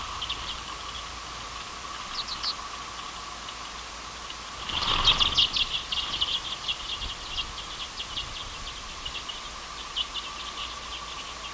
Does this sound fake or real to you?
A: real